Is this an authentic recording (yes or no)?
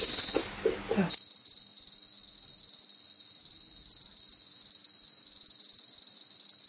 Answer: yes